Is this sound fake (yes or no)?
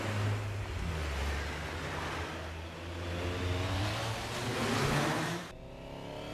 no